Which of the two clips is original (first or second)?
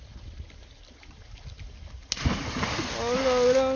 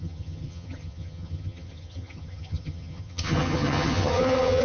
first